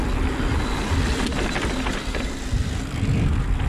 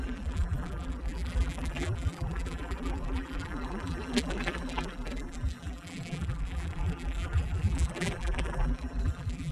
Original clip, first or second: first